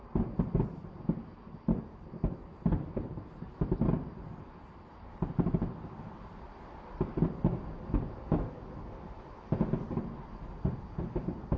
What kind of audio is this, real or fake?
real